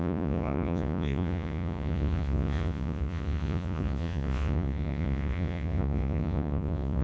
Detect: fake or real fake